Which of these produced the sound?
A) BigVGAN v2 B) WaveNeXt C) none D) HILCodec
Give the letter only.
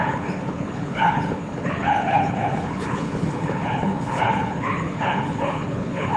D